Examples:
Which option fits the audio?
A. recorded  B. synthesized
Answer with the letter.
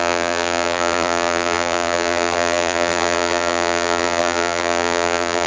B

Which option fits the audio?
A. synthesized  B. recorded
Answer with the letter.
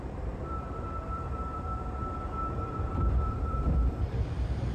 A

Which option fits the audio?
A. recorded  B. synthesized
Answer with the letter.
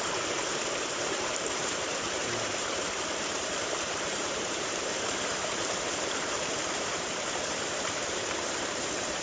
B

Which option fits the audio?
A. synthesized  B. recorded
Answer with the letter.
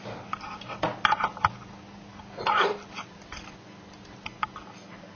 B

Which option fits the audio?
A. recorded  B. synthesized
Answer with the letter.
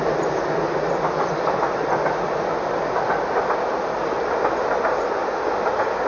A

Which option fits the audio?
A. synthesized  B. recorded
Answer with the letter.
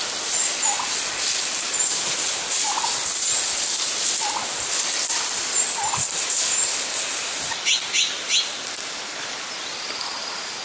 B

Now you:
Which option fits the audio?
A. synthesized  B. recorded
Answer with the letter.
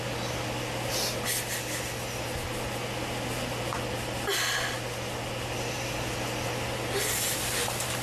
B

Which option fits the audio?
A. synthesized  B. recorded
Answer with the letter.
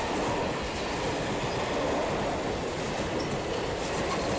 B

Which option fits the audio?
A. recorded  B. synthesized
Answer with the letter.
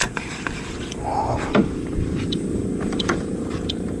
B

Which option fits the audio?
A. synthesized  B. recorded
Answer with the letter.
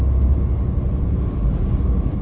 B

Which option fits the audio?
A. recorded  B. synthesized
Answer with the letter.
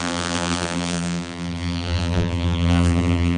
B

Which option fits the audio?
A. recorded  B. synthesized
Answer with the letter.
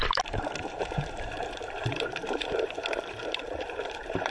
B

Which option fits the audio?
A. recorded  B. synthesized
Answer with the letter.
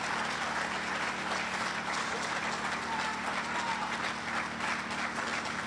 A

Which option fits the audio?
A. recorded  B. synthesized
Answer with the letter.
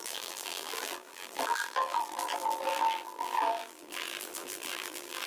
B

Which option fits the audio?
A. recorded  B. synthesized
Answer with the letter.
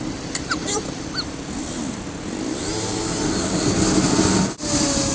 A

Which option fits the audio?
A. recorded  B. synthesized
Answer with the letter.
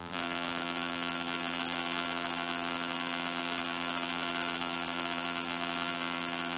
B